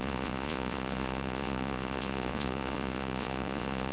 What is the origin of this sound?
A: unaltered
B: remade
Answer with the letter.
B